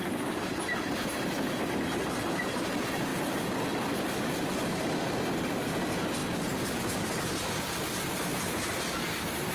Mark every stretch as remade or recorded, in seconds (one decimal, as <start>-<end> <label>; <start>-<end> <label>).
0.0-9.5 recorded